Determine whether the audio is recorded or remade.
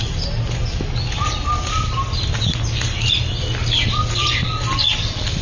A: recorded